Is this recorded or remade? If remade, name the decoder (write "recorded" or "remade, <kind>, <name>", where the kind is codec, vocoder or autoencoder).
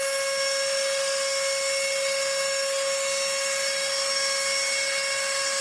recorded